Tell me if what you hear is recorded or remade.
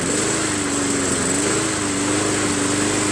recorded